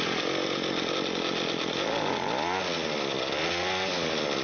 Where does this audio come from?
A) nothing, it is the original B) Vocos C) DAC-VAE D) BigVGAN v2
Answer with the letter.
A